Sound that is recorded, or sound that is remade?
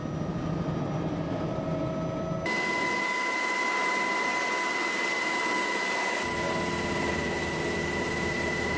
recorded